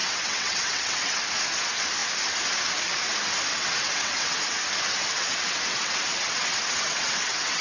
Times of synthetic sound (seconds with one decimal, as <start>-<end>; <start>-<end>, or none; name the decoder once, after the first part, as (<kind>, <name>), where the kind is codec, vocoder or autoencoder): 0.0-1.2 (vocoder, WaveNeXt); 3.5-4.4; 4.9-7.6